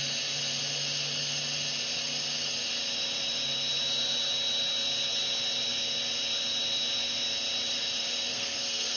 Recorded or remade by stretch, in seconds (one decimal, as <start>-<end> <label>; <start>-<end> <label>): 0.0-8.3 recorded; 8.3-9.0 remade